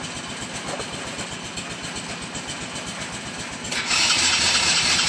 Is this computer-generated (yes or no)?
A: no